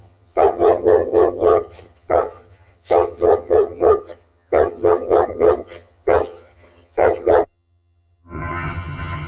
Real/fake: fake